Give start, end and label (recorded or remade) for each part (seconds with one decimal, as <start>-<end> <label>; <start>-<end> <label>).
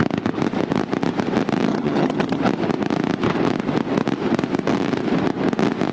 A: 0.0-1.7 recorded; 1.7-2.4 remade; 2.4-5.9 recorded